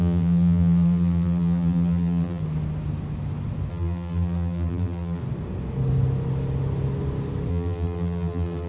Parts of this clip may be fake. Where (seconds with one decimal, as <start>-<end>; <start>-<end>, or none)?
0.0-2.4; 3.7-5.2; 7.5-8.7